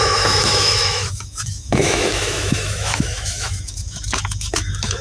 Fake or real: fake